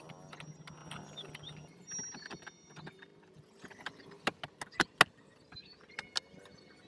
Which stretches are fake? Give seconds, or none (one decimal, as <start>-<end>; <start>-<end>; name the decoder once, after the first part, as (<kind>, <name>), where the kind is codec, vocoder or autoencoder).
none